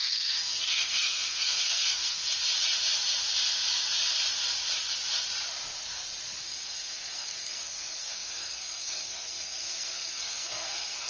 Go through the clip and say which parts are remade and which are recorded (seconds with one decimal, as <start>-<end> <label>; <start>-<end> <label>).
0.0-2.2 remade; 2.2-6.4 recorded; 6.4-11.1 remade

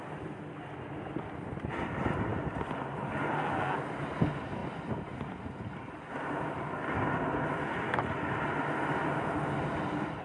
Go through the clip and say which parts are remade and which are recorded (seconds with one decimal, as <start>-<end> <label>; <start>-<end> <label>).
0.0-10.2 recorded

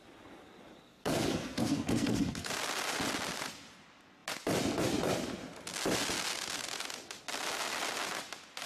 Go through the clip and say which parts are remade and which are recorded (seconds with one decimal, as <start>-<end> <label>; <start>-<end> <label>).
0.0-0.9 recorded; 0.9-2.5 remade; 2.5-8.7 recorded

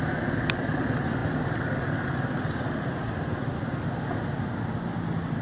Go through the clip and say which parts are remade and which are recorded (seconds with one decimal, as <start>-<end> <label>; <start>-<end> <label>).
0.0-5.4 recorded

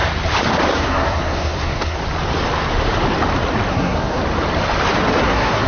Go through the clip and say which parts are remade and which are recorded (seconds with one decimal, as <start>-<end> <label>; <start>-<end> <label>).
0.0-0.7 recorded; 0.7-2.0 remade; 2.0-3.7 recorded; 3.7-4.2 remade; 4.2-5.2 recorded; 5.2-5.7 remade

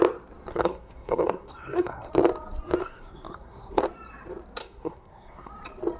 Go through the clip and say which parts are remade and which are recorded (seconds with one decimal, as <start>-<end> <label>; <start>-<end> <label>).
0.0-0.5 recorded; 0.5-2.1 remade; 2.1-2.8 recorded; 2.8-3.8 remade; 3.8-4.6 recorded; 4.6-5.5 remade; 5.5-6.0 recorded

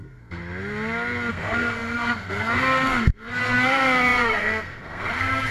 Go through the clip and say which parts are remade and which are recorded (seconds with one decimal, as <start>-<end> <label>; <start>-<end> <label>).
0.0-0.4 remade; 0.4-1.3 recorded; 1.3-5.5 remade

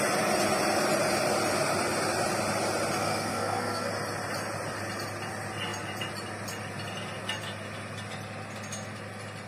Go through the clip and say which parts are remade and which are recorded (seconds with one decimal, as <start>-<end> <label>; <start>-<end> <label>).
0.0-3.0 recorded; 3.0-3.9 remade; 3.9-9.5 recorded